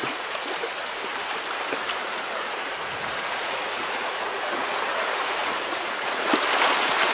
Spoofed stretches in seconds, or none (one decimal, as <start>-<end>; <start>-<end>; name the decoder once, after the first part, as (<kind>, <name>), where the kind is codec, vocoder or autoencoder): 0.0-0.5 (vocoder, Vocos); 2.0-6.3

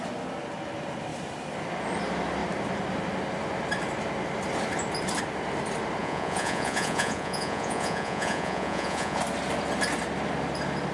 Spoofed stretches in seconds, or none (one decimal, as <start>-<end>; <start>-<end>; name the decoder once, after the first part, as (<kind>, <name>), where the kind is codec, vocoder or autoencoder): 6.0-9.2 (vocoder, Vocos)

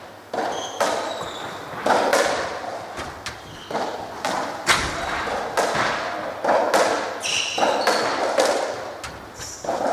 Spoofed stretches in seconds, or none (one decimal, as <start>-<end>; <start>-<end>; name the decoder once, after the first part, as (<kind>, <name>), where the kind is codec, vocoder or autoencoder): none